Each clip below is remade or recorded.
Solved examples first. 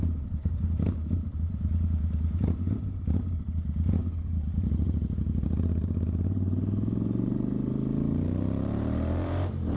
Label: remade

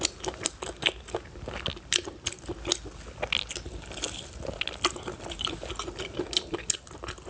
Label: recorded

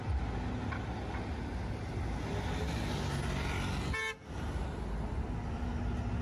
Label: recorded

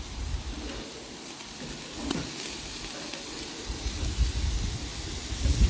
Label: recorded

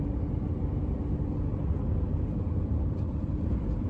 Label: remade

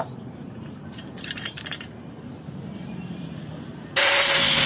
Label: remade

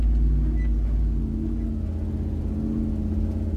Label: recorded